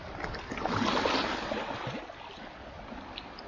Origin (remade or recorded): recorded